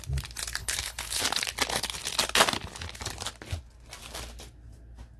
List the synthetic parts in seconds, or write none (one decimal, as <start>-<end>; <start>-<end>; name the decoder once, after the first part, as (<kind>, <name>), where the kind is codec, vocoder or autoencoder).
0.6-1.2 (codec, HILCodec)